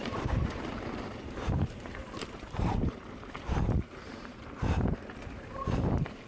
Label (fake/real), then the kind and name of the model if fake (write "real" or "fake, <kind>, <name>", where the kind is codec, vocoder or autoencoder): fake, vocoder, BigVGAN v2